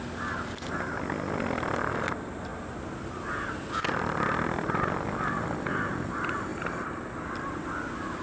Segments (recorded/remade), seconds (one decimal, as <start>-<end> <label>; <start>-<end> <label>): 0.0-6.5 recorded; 6.5-7.0 remade; 7.0-8.2 recorded